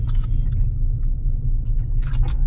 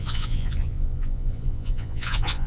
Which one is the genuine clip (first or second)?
first